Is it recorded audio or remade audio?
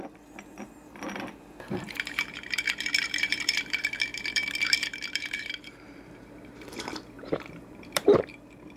remade